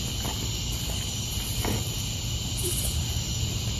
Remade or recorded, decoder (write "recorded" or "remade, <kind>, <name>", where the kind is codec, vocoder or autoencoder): recorded